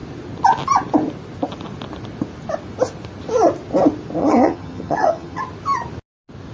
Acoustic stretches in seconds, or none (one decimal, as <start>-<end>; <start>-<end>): 0.0-4.2; 5.4-6.5